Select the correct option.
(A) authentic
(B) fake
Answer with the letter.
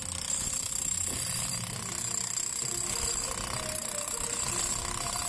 A